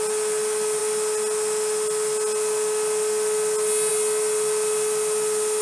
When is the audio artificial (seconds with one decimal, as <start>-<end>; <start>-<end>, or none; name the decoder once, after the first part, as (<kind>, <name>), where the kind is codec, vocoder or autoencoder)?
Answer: none